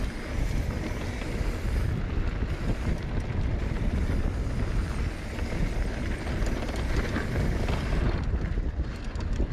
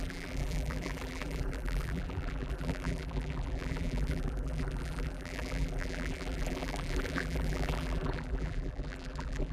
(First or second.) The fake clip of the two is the second